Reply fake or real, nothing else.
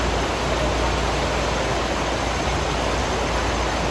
real